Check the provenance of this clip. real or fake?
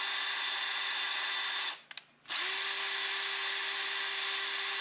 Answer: real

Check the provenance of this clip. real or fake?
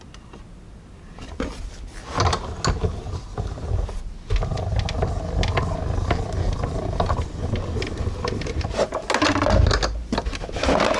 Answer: real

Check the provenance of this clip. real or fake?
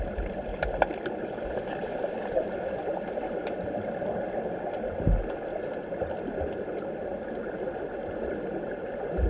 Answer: real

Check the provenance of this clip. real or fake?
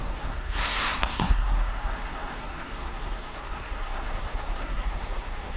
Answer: fake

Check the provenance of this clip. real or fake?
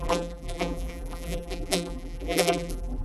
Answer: fake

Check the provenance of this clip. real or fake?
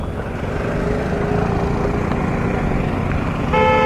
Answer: real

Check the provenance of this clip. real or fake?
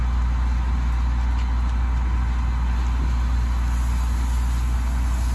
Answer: real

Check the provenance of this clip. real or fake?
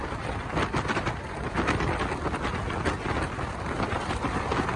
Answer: real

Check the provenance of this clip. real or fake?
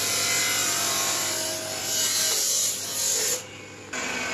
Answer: real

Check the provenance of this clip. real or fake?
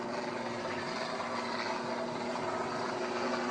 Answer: real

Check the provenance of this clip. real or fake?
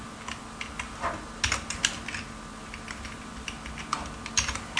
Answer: real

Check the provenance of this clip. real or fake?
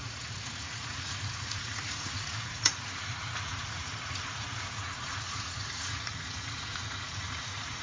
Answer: fake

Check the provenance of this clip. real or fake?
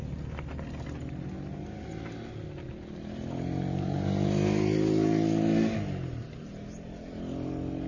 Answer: real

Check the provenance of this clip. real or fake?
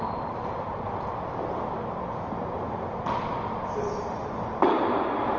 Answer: real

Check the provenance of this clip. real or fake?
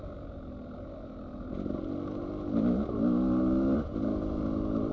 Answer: real